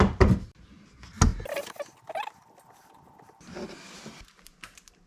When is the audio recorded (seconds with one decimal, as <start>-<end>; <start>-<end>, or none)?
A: 0.0-5.1